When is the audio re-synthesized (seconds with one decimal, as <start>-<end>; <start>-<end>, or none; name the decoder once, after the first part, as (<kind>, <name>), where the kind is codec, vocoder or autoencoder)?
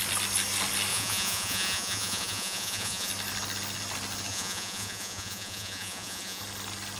0.9-3.1 (vocoder, Vocos); 4.3-6.4